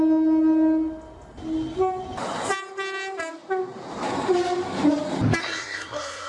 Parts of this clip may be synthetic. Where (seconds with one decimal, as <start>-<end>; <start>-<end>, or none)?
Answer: 5.4-6.3